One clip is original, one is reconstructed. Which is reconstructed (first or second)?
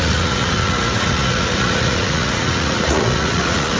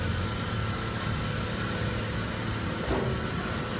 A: first